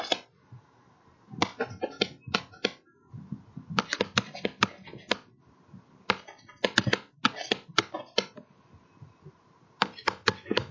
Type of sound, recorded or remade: recorded